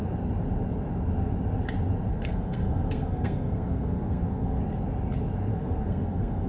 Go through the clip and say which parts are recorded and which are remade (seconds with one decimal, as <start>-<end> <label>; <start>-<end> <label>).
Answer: 0.0-2.1 recorded; 2.1-4.6 remade; 4.6-5.5 recorded; 5.5-6.5 remade